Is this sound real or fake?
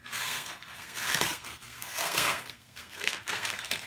fake